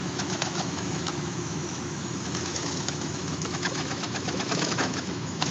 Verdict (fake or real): fake